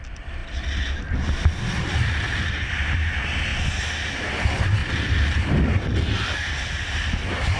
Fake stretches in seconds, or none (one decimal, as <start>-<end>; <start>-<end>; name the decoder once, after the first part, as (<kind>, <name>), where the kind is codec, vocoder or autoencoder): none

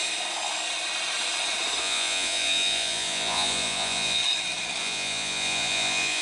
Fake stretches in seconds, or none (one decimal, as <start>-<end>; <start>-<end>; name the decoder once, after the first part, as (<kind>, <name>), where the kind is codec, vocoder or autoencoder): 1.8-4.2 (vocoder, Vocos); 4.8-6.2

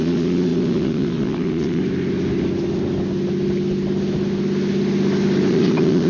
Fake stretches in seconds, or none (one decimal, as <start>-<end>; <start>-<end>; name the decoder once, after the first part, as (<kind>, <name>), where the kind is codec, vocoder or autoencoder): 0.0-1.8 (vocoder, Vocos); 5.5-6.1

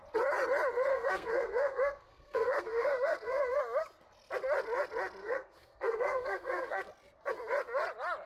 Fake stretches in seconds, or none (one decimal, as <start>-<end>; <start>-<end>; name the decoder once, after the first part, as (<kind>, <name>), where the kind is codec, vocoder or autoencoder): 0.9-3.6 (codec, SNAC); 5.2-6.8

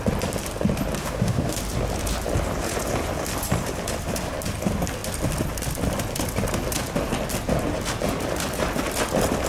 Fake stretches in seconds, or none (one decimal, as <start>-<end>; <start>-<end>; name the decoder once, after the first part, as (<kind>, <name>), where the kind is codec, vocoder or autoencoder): 1.0-1.6 (autoencoder, DAC-VAE)